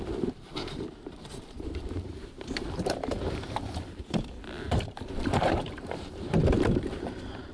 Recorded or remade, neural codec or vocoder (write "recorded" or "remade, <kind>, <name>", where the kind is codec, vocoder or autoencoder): remade, vocoder, BigVGAN v2